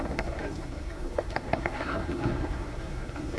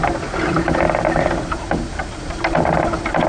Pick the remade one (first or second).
first